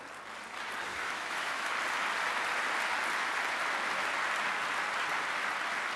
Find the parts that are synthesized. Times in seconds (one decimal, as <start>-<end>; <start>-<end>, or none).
0.9-1.7